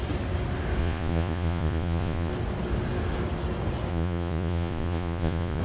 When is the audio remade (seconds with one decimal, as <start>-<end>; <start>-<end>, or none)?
0.8-2.3; 3.9-5.6